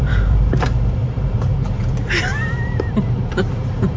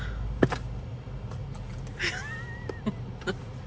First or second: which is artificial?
first